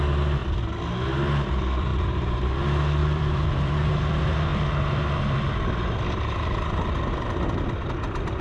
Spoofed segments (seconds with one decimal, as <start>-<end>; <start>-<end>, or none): 1.9-2.5; 3.0-4.0